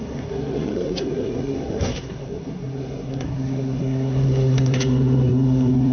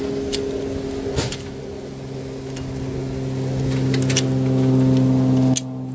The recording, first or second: second